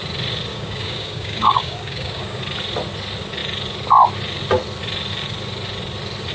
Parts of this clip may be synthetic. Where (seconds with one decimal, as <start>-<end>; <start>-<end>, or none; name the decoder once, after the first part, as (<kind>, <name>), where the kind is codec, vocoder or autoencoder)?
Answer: 0.5-2.4 (codec, DAC)